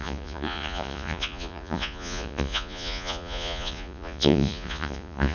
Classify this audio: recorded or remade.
remade